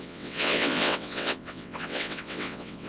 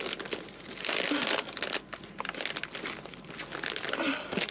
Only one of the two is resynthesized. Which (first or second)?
first